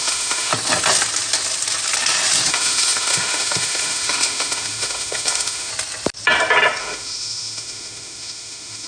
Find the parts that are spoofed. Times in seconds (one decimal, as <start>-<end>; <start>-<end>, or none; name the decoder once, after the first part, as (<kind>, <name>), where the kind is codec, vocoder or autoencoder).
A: 0.0-0.5 (autoencoder, DAC-VAE); 2.5-5.7; 6.8-8.9